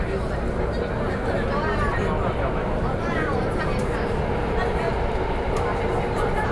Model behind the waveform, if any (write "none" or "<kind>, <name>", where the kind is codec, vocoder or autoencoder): none